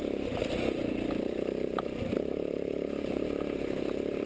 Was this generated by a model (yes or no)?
yes